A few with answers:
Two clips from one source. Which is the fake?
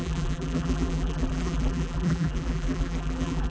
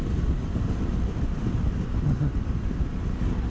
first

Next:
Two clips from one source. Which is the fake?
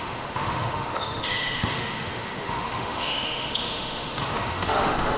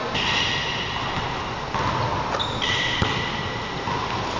first